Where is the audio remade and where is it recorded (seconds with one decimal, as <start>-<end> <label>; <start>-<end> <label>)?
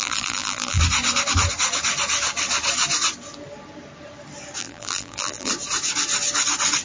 0.0-0.8 remade; 0.8-4.6 recorded; 4.6-5.5 remade; 5.5-6.8 recorded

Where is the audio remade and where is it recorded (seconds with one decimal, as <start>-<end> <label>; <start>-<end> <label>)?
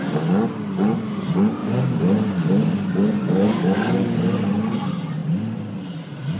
0.0-3.2 recorded; 3.2-4.5 remade; 4.5-6.4 recorded